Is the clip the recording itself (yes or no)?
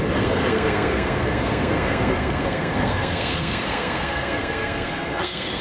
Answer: no